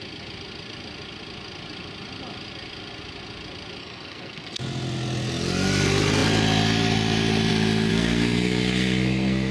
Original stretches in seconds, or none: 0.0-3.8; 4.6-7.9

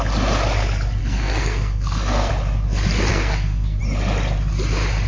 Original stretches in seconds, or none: 0.0-1.0; 2.3-3.1; 3.8-5.1

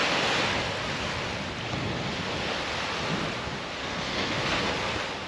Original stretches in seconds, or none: 0.0-3.8; 4.6-5.3